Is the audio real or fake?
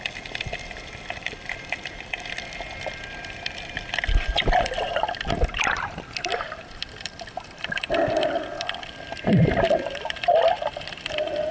fake